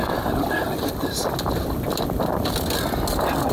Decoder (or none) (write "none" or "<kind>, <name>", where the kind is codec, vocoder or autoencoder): none